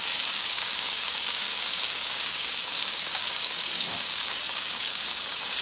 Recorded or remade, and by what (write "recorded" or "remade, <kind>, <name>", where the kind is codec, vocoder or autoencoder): remade, codec, DAC